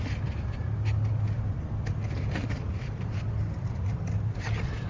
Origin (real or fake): real